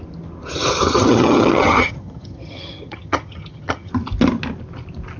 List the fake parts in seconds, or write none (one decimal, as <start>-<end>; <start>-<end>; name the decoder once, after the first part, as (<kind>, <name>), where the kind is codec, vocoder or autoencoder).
0.8-3.9 (vocoder, HiFi-GAN)